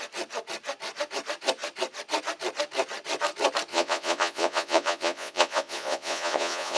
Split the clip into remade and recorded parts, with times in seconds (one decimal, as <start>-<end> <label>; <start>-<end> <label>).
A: 0.0-3.7 recorded; 3.7-6.8 remade